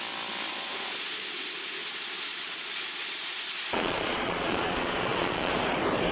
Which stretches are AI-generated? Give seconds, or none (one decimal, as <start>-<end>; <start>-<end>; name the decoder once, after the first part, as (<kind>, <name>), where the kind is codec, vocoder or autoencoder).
0.5-1.2 (vocoder, Vocos); 1.8-5.5

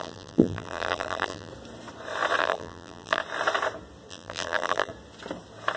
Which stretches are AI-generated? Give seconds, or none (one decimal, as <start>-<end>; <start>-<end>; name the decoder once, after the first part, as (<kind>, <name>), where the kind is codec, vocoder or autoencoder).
0.0-1.5 (vocoder, BigVGAN v2); 2.4-3.2; 4.1-4.9

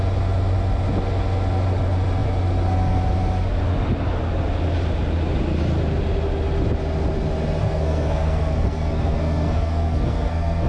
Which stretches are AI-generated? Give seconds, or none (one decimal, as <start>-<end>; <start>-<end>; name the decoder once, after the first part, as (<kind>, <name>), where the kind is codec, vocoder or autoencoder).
7.6-10.7 (codec, SNAC)

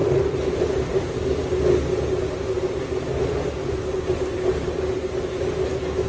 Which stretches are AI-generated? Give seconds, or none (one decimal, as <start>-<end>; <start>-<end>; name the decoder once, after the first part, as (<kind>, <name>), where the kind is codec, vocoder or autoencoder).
none